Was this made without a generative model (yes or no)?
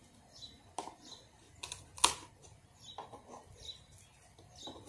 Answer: yes